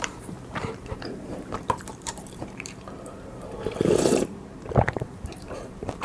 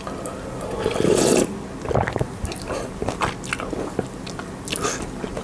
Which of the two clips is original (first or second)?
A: second